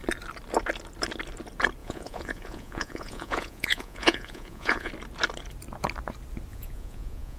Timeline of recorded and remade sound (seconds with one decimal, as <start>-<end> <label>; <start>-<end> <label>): 0.0-1.8 recorded; 1.8-4.9 remade; 4.9-6.5 recorded; 6.5-7.4 remade